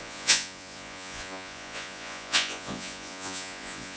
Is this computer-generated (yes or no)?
yes